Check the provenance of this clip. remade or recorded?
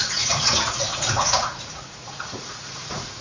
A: remade